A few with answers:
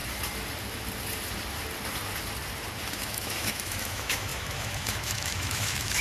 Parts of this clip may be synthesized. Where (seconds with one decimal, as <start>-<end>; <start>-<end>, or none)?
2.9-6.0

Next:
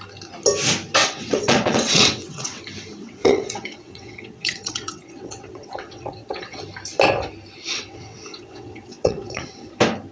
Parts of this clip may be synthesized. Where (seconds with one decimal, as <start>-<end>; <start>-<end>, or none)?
1.0-2.6; 3.0-6.6; 7.7-9.7

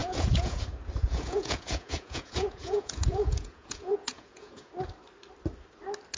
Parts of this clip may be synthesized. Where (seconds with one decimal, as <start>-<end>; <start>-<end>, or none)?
0.0-0.6; 1.0-4.7